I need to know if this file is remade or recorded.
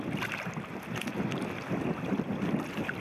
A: recorded